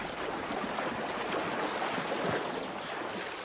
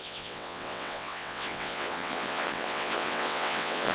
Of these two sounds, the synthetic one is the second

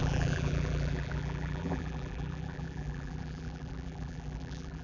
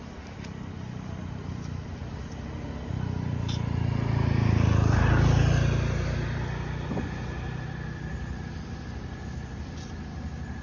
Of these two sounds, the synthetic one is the first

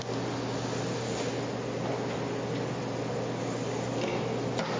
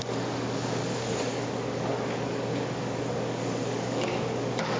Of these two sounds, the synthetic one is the second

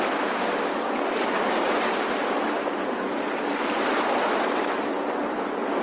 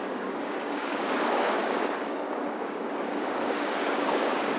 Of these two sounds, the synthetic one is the second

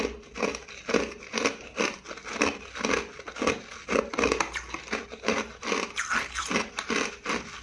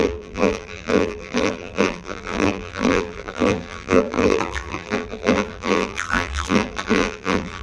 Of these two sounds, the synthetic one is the second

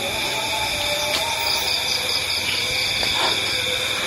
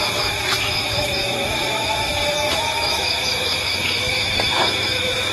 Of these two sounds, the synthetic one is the second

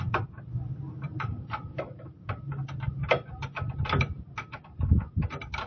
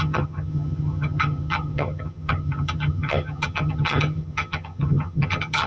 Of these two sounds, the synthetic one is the second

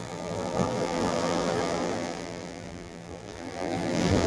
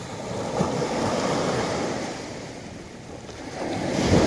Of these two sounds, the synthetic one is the first